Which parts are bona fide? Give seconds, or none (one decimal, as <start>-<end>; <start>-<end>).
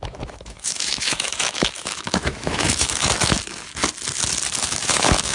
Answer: 3.8-4.6